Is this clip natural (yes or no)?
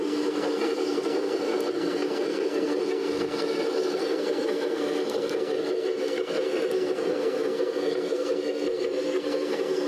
no